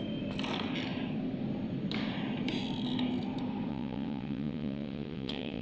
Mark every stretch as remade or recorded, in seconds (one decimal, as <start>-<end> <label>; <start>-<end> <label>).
0.0-3.7 recorded; 3.7-5.6 remade